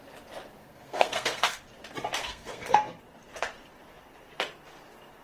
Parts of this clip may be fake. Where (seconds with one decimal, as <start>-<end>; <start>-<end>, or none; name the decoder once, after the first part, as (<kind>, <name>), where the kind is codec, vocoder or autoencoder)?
0.6-1.6 (codec, SNAC); 2.2-3.0